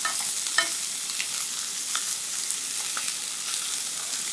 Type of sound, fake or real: real